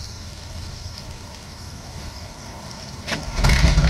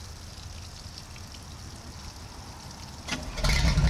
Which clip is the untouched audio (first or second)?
second